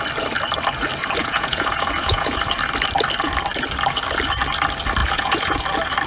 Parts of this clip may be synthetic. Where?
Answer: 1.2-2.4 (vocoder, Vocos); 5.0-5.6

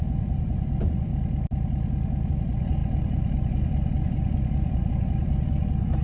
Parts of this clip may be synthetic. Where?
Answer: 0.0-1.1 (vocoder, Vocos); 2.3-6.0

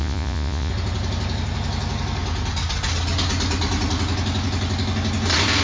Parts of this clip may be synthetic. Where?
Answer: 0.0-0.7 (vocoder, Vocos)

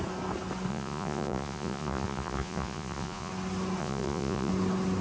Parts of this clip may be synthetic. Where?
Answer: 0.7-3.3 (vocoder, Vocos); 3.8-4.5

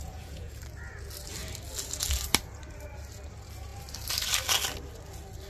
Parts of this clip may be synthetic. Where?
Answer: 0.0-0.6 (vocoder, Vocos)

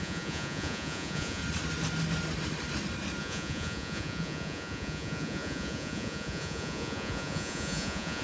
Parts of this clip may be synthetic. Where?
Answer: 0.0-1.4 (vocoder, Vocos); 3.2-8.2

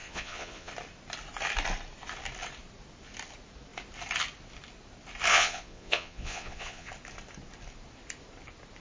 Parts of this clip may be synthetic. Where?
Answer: 0.0-0.7 (vocoder, Vocos); 5.3-6.9